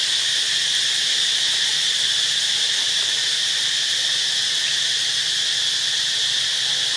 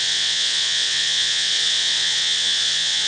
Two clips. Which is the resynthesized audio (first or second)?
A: second